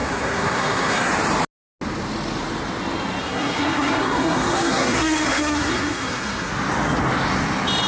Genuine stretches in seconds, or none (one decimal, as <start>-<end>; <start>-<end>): 1.1-3.2; 6.5-7.9